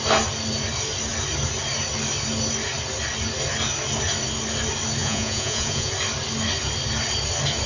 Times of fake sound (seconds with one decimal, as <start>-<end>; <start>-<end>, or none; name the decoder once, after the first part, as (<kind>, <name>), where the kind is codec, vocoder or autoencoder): 5.0-5.9 (vocoder, Vocos)